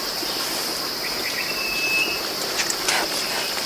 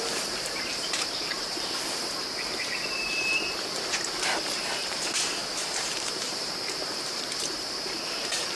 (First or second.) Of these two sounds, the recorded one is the first